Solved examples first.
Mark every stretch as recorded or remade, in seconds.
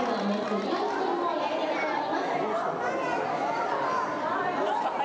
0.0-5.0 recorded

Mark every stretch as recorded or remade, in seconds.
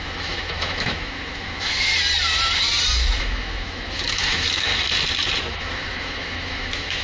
0.0-1.9 remade; 1.9-3.2 recorded; 3.2-4.7 remade; 4.7-5.4 recorded; 5.4-7.0 remade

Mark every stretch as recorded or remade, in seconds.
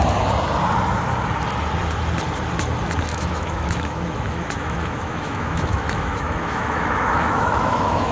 0.0-3.1 recorded; 3.1-8.1 remade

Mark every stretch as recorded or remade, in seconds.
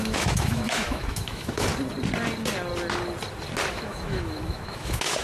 0.0-1.7 remade; 1.7-3.7 recorded; 3.7-5.2 remade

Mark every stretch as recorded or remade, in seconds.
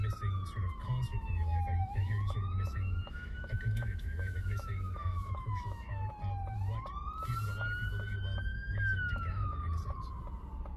0.0-1.1 recorded; 1.1-6.1 remade; 6.1-8.5 recorded; 8.5-9.6 remade; 9.6-10.8 recorded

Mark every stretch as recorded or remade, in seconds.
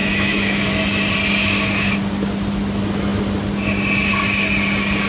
0.0-0.7 remade; 0.7-1.4 recorded; 1.4-2.0 remade; 2.0-5.1 recorded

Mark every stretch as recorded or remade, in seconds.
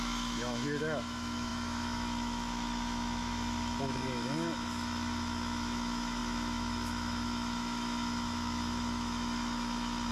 0.0-10.1 remade